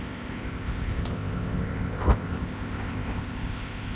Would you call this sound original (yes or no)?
no